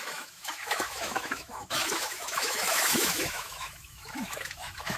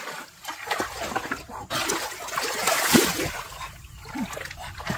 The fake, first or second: first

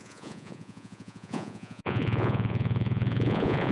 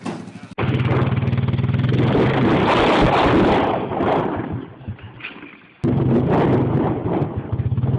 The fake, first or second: first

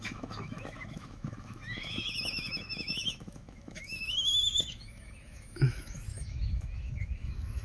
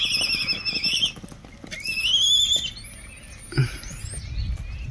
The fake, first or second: first